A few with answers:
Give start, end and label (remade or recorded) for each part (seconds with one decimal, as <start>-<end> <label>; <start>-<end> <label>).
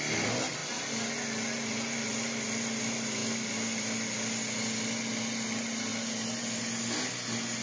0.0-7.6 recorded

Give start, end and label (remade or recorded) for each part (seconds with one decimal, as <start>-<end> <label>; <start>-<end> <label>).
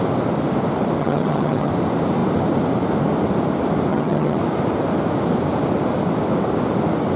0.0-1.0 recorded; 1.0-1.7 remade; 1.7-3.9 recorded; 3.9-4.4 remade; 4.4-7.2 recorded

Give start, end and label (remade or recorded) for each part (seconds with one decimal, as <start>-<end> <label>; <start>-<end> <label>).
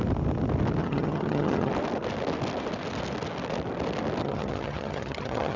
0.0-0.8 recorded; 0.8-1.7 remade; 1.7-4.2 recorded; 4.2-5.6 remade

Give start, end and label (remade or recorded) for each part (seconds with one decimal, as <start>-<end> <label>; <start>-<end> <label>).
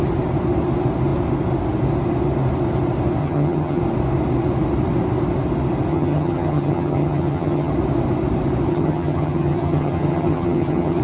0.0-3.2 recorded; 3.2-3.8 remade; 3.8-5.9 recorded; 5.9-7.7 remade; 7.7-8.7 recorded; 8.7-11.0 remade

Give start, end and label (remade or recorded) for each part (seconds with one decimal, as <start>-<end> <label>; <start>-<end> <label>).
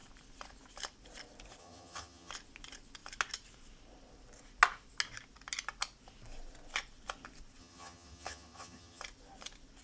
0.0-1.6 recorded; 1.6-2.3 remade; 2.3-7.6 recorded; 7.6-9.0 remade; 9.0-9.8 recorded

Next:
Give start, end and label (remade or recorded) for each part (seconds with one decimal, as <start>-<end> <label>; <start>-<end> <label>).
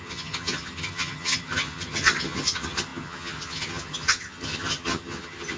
0.0-5.6 remade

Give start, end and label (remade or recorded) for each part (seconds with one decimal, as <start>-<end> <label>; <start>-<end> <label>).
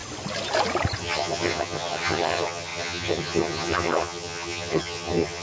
0.0-1.0 recorded; 1.0-5.4 remade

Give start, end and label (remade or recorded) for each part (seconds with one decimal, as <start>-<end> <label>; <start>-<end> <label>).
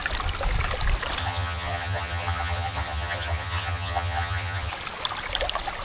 0.0-1.2 recorded; 1.2-4.7 remade; 4.7-5.8 recorded